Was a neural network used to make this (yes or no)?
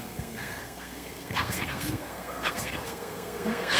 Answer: yes